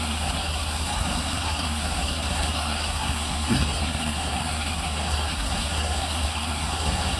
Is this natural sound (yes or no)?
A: no